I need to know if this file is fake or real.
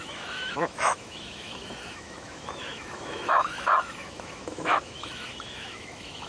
fake